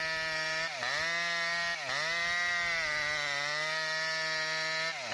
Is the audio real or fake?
real